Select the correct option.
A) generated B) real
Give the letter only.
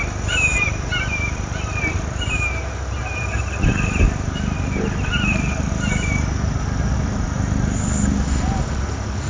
A